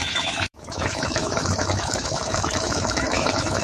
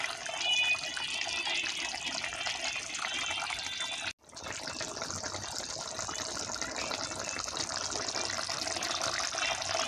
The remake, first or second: first